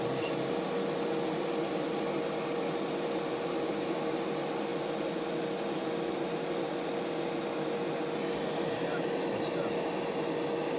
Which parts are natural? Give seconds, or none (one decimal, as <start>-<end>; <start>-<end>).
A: 0.0-10.8